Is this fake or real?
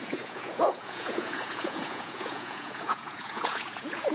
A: fake